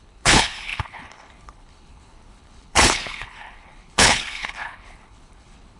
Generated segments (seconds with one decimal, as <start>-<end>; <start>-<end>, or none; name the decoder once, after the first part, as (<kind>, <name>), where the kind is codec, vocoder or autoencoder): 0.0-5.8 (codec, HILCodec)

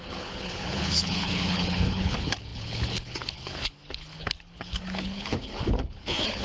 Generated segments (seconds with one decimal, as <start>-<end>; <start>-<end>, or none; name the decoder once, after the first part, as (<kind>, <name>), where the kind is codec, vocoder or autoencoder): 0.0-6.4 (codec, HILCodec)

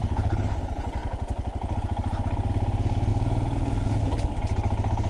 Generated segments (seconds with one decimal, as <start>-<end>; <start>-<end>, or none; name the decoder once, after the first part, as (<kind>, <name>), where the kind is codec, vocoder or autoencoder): 0.0-0.6 (codec, HILCodec)

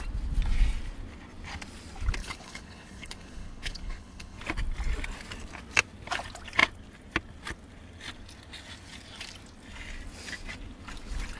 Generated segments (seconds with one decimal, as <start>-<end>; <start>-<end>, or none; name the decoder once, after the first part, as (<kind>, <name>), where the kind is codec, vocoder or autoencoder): 2.2-4.4 (codec, HILCodec)